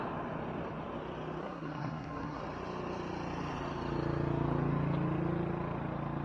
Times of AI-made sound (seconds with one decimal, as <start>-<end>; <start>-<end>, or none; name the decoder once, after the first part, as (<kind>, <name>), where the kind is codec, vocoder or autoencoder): 1.4-2.4 (codec, SNAC)